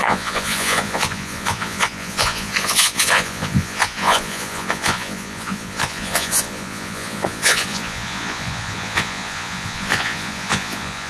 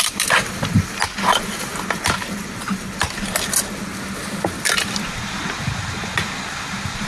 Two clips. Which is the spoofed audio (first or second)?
first